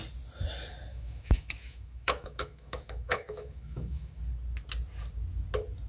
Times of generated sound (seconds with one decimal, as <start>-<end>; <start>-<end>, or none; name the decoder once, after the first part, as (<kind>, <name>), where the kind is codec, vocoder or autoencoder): 0.9-4.2 (autoencoder, DAC-VAE)